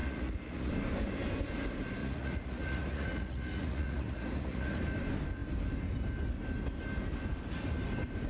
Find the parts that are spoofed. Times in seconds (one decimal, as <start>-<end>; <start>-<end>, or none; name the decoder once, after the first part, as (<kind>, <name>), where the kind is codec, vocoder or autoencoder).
0.0-0.7 (vocoder, Vocos); 2.0-4.8